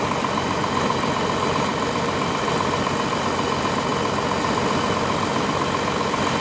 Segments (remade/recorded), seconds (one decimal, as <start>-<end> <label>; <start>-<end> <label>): 0.0-6.4 recorded